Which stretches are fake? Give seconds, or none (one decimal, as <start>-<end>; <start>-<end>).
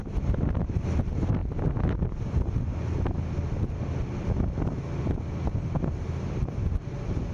none